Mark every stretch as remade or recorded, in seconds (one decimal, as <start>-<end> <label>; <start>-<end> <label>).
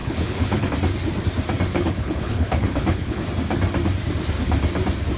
0.0-0.7 remade; 0.7-1.7 recorded; 1.7-3.2 remade; 3.2-5.2 recorded